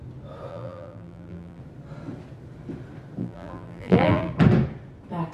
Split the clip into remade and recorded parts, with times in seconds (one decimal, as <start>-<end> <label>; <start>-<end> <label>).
0.0-0.5 recorded; 0.5-1.6 remade; 1.6-3.2 recorded; 3.2-4.3 remade; 4.3-5.3 recorded